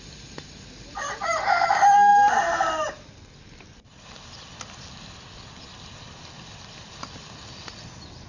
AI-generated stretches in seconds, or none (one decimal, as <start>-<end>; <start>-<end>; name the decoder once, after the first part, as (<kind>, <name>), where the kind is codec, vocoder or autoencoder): none